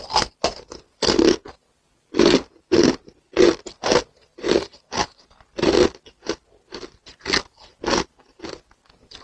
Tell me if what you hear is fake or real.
real